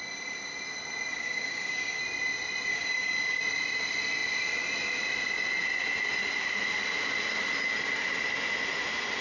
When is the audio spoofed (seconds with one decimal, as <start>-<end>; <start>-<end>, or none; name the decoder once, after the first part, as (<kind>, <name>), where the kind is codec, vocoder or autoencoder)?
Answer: 1.1-2.0 (codec, DAC); 2.7-3.4